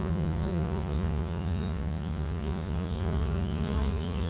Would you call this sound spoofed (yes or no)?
yes